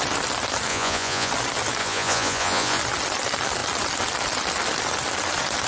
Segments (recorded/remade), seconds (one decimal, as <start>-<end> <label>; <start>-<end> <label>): 0.0-0.7 recorded; 0.7-1.3 remade; 1.3-1.8 recorded; 1.8-2.8 remade; 2.8-5.7 recorded